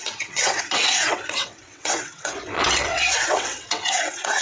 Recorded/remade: remade